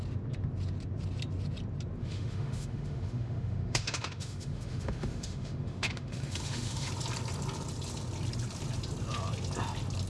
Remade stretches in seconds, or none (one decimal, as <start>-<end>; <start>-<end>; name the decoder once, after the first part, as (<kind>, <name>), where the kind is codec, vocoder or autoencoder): 2.0-6.9 (autoencoder, DAC-VAE)